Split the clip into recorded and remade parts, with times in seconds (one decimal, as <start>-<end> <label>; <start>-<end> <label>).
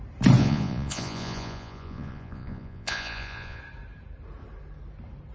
0.0-0.4 recorded; 0.4-3.6 remade; 3.6-5.3 recorded